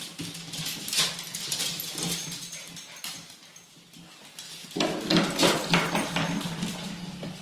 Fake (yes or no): no